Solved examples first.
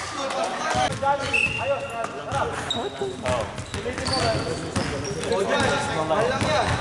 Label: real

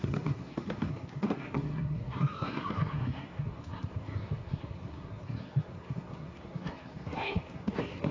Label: fake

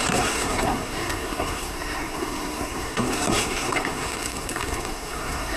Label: fake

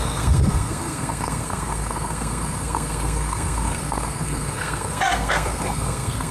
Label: fake